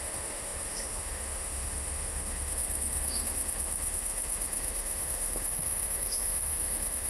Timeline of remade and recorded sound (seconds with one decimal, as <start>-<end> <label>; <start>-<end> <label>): 0.0-7.1 remade